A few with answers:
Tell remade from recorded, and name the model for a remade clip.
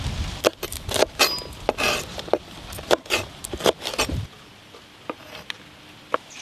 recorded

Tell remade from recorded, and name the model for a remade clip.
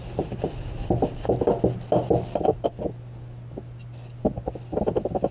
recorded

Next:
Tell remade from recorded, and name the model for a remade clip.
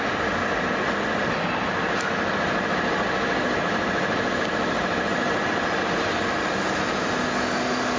recorded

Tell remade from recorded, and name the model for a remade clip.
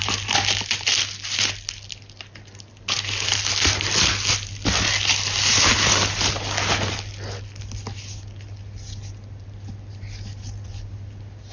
recorded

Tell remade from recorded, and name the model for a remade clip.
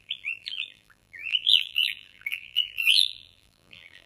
remade, vocoder, BigVGAN v2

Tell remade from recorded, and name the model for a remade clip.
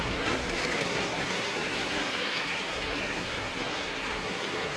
remade, codec, SNAC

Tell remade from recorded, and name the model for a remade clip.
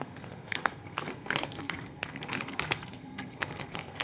remade, codec, SNAC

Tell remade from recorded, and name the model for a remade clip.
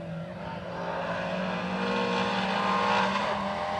recorded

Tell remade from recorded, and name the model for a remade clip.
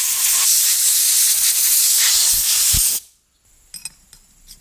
recorded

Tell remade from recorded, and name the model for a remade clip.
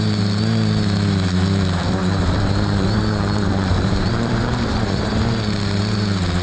remade, vocoder, BigVGAN v2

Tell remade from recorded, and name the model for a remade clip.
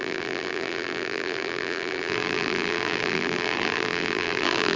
remade, vocoder, BigVGAN v2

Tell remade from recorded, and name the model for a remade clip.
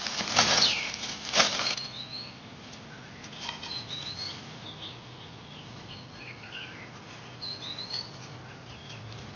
recorded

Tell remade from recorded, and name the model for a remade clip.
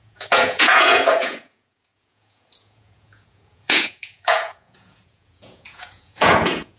remade, vocoder, Vocos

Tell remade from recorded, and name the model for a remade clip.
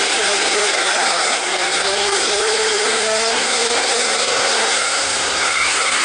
remade, codec, SNAC